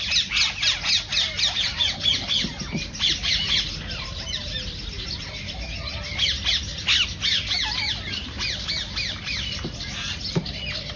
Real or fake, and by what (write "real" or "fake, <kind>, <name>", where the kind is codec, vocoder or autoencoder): real